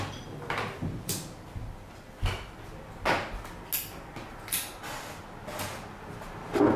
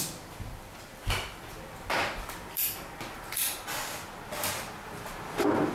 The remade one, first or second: second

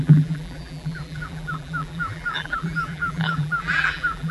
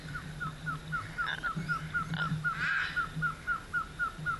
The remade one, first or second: first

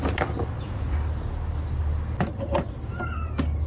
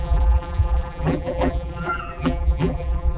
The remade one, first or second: second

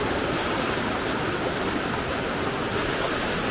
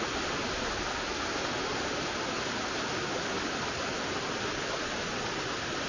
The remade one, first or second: first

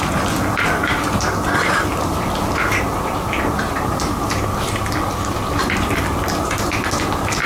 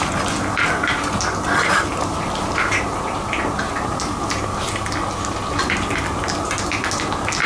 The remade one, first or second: first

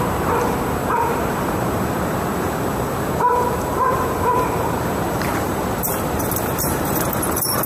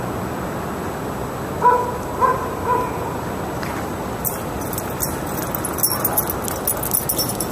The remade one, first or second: first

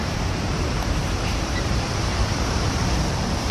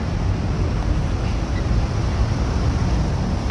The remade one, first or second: first